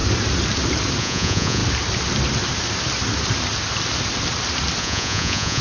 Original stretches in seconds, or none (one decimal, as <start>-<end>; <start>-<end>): 0.0-1.0; 1.6-4.8